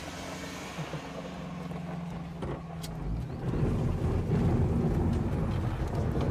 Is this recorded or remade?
recorded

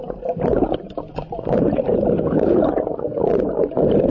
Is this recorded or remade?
remade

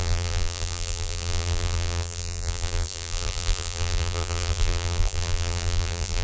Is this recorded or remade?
remade